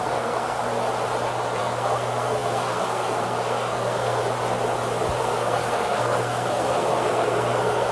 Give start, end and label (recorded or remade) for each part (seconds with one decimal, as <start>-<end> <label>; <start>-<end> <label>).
0.0-0.6 remade; 0.6-1.6 recorded; 1.6-4.2 remade; 4.2-5.2 recorded; 5.2-7.9 remade